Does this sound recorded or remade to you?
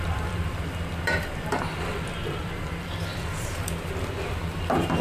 remade